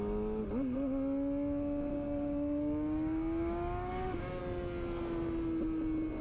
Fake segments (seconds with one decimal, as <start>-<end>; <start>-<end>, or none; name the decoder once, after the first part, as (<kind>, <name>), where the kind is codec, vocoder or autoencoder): 1.9-4.4 (codec, DAC)